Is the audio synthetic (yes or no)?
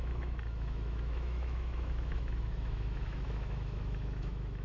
yes